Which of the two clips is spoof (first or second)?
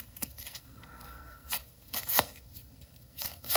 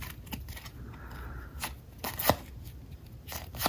first